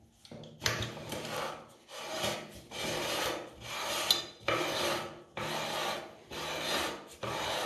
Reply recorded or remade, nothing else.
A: recorded